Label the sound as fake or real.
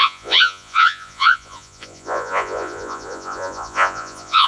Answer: fake